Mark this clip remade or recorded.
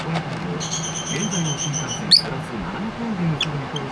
recorded